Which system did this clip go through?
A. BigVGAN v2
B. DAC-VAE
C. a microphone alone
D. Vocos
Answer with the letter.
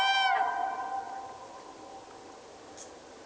C